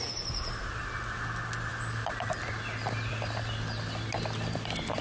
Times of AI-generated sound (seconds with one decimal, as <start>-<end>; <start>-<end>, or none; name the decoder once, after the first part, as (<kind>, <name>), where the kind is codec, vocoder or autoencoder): none